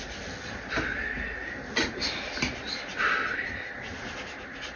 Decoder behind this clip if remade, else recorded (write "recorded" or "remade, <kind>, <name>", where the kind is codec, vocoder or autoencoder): recorded